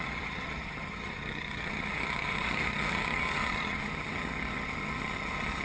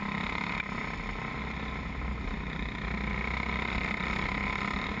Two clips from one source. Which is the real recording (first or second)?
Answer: second